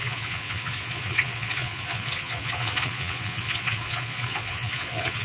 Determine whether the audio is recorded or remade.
remade